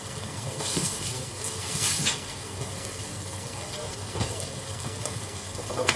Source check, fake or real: fake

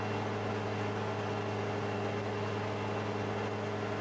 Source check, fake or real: real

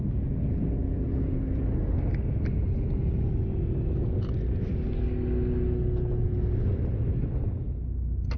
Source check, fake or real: real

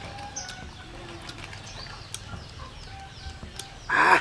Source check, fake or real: real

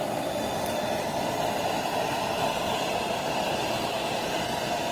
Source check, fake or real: real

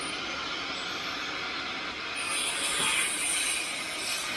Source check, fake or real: real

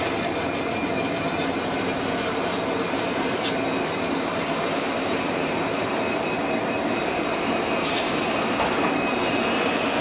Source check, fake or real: fake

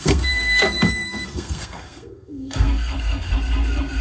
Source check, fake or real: fake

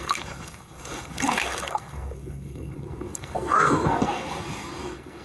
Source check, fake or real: fake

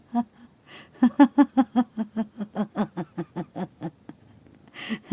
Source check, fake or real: real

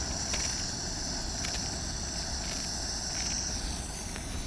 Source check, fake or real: real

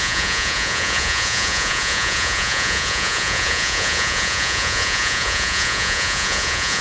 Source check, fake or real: fake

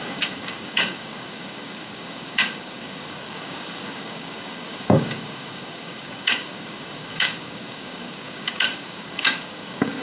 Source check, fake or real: fake